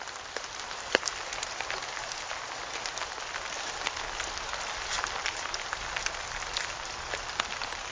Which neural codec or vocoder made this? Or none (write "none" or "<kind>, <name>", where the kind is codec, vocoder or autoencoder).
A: none